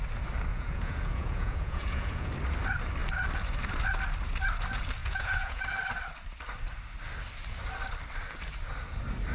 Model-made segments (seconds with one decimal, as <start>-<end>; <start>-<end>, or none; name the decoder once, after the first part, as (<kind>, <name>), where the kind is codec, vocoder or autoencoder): 0.5-2.3 (vocoder, Vocos); 5.0-5.6